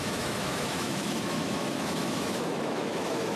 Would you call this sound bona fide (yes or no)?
no